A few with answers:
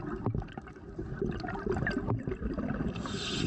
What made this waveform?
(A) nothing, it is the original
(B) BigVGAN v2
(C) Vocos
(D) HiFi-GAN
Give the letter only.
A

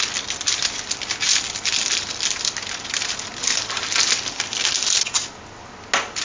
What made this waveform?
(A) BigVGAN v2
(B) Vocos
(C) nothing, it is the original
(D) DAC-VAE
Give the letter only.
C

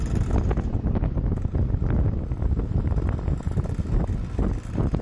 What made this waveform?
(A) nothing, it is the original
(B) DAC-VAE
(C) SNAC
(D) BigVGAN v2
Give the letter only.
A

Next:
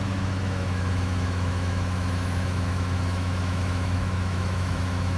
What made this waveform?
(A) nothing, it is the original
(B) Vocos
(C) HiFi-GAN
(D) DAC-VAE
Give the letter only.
D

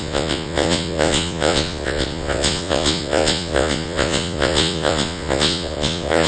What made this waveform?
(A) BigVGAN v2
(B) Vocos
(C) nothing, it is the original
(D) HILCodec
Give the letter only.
B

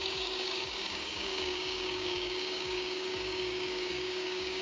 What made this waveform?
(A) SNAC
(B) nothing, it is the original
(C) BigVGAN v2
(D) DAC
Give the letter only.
D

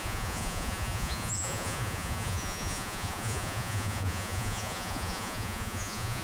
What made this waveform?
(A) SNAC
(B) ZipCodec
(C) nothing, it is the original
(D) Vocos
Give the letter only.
D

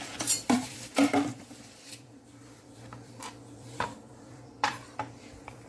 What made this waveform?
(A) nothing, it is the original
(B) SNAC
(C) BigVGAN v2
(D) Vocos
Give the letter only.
C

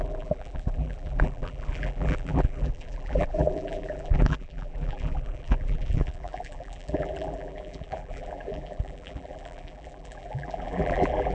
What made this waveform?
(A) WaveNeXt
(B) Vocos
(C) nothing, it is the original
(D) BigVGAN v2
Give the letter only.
D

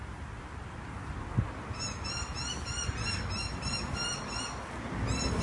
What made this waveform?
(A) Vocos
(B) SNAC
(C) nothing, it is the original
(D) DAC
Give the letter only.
C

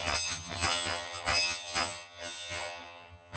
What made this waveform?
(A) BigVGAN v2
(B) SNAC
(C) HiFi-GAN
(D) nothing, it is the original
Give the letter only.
C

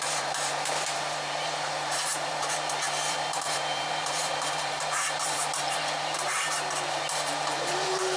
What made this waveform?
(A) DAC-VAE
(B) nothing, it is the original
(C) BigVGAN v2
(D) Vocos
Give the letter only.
C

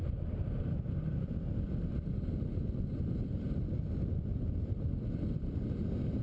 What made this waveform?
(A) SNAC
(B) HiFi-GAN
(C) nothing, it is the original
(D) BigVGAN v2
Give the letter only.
C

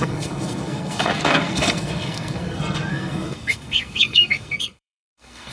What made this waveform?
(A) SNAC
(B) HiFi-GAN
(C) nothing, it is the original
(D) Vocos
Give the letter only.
A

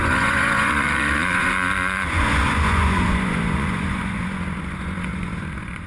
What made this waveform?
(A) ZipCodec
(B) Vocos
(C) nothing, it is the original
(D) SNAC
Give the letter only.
B